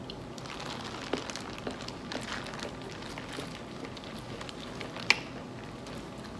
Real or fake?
real